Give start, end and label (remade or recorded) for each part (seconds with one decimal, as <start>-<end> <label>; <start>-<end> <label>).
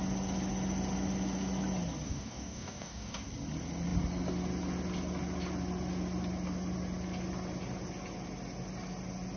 0.0-2.1 recorded; 2.1-3.3 remade; 3.3-9.4 recorded